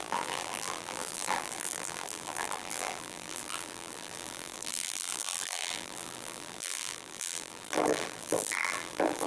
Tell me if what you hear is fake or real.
fake